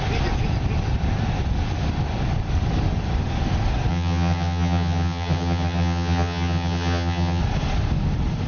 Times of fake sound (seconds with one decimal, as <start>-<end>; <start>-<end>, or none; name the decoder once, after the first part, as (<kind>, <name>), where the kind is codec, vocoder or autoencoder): 3.9-7.4 (vocoder, HiFi-GAN)